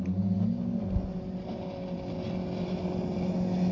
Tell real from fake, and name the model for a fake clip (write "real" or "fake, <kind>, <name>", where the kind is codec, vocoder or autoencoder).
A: real